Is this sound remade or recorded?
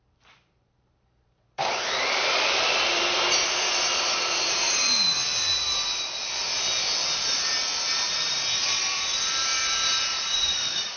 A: remade